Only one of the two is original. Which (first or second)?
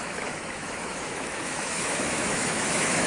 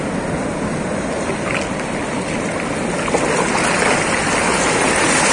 second